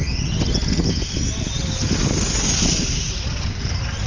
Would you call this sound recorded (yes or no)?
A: yes